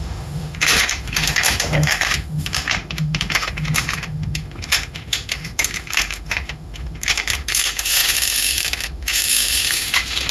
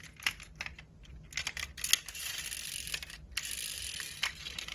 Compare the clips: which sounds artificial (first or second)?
first